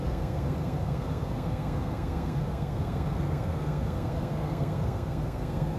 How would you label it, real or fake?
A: fake